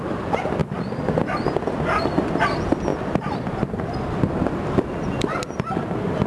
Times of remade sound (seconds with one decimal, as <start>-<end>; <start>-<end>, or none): none